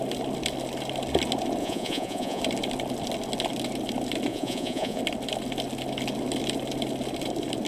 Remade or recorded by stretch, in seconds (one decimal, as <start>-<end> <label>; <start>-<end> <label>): 0.0-1.6 recorded; 1.6-2.4 remade; 2.4-4.3 recorded; 4.3-5.0 remade; 5.0-7.7 recorded

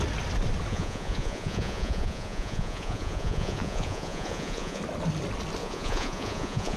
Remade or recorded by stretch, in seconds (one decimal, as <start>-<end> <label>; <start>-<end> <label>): 0.0-0.7 recorded; 0.7-4.8 remade; 4.8-5.6 recorded; 5.6-6.8 remade

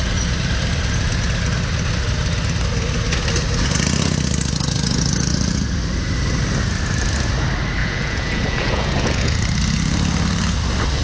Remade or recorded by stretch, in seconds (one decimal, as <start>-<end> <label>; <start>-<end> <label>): 0.0-7.8 recorded; 7.8-9.4 remade; 9.4-11.0 recorded

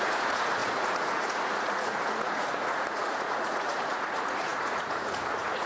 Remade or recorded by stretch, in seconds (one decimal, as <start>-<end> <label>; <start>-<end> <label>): 0.0-5.7 remade

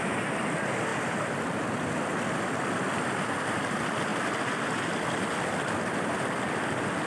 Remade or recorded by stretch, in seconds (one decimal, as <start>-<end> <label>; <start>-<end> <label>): 0.0-7.1 recorded

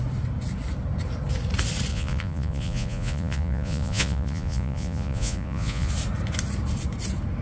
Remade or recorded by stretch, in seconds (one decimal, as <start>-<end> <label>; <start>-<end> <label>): 0.0-1.9 recorded; 1.9-5.9 remade; 5.9-7.4 recorded

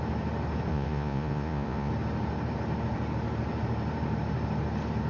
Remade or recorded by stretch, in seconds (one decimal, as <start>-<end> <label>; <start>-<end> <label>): 0.0-0.7 recorded; 0.7-1.9 remade; 1.9-5.1 recorded